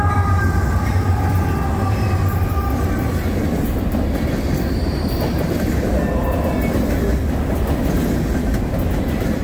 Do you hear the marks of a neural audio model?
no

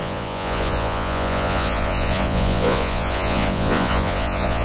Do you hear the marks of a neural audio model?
yes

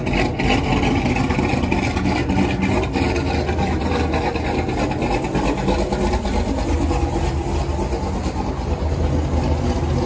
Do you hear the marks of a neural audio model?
no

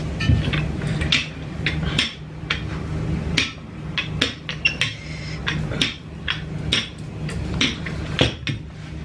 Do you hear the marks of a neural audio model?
no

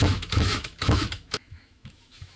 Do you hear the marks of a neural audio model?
yes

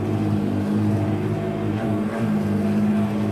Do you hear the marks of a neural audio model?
no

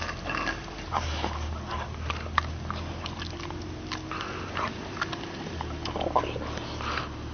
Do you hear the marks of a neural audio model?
no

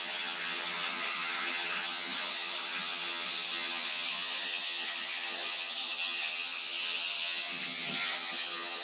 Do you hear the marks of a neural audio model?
yes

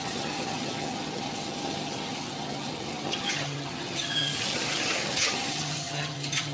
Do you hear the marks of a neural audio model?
yes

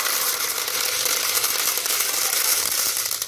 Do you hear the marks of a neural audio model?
no